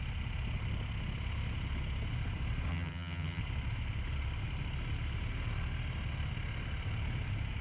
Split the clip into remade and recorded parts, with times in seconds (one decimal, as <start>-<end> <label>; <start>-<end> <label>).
0.0-2.7 recorded; 2.7-3.4 remade; 3.4-7.6 recorded